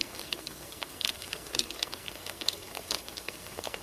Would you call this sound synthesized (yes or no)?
yes